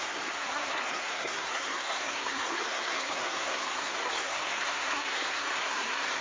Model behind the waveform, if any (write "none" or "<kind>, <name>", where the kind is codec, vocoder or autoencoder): codec, SNAC